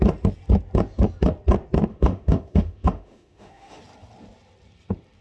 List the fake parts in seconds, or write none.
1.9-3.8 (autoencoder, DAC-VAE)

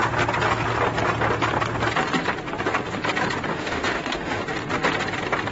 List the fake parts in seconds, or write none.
3.5-4.4 (autoencoder, DAC-VAE)